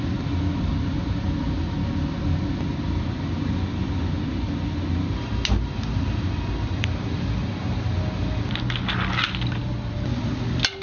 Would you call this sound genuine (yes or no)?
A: yes